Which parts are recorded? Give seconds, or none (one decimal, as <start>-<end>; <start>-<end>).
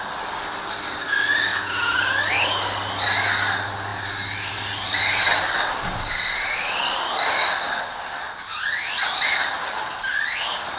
0.0-1.5; 2.0-10.8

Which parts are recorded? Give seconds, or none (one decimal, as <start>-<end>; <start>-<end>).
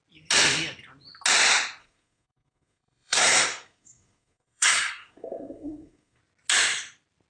0.0-1.8; 6.2-7.3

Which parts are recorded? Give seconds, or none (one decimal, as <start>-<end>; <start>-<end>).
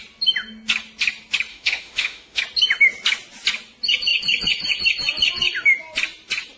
0.0-1.5; 2.4-6.6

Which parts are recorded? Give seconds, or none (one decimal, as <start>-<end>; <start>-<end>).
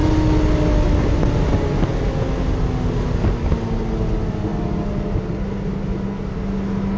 0.0-7.0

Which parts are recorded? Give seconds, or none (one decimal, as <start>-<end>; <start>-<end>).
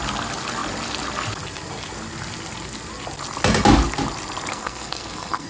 0.0-4.5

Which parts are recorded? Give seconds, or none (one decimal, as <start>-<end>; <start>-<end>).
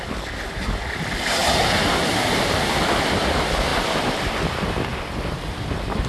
0.0-1.4; 1.9-6.1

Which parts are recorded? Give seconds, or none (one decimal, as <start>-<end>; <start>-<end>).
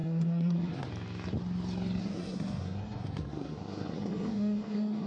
0.9-2.0